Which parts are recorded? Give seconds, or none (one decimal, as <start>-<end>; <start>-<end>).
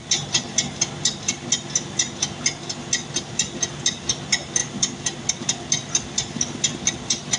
0.0-7.4